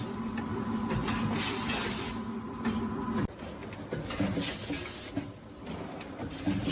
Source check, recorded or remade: recorded